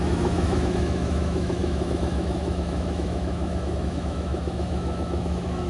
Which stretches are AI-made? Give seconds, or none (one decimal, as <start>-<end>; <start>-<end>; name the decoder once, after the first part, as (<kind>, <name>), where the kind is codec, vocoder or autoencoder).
0.0-5.7 (autoencoder, DAC-VAE)